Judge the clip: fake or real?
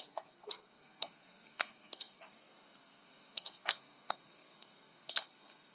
fake